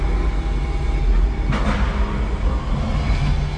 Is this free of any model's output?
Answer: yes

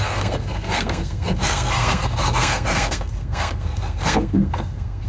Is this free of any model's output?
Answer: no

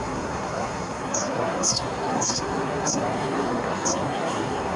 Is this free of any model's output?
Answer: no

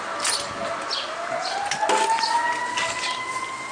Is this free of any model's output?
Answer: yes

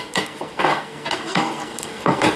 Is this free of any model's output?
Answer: no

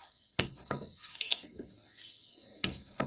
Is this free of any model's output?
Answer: no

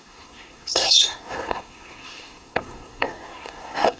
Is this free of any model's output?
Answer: no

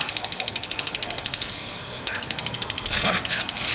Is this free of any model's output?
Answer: no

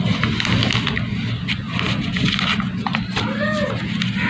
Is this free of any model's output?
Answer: yes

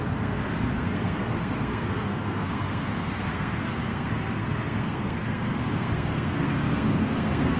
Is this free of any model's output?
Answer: no